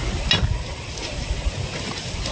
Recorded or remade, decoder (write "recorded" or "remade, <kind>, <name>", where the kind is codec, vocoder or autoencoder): recorded